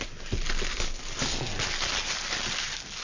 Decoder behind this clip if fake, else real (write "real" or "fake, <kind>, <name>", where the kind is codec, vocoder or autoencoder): real